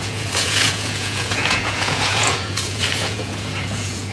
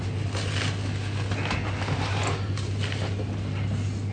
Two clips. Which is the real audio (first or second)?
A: second